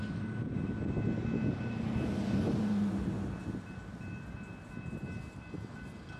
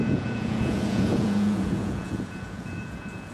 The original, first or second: first